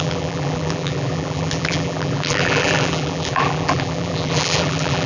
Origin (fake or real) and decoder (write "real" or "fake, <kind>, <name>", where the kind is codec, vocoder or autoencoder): fake, vocoder, BigVGAN v2